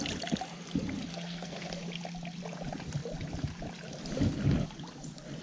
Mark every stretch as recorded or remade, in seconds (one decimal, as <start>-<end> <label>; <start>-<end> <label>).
0.0-1.1 recorded; 1.1-1.7 remade; 1.7-5.4 recorded